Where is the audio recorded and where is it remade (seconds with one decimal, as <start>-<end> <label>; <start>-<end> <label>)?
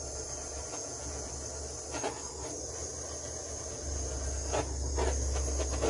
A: 0.0-0.7 recorded; 0.7-1.3 remade; 1.3-5.9 recorded